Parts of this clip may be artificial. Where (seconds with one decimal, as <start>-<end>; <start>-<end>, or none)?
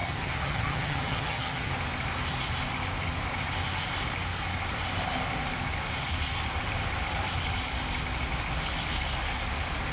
0.0-1.7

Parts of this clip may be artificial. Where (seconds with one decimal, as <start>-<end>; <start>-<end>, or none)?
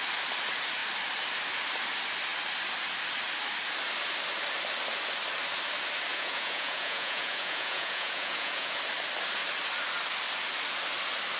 6.1-8.8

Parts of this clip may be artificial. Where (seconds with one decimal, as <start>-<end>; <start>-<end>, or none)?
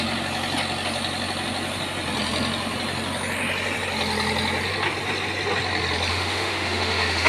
6.1-7.3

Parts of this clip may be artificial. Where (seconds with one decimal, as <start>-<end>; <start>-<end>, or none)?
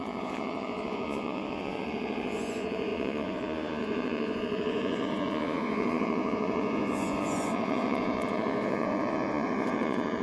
0.0-10.2